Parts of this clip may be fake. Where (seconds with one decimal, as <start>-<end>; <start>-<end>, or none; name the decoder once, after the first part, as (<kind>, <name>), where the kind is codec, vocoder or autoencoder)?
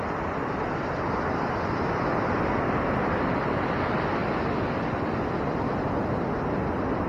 none